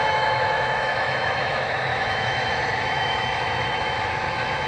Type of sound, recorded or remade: remade